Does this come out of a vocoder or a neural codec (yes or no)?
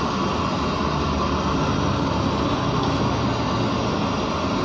no